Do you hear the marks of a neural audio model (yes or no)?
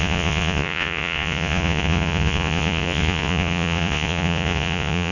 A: yes